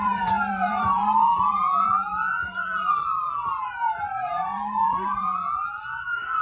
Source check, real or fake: fake